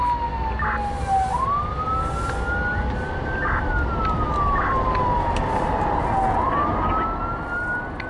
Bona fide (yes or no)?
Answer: yes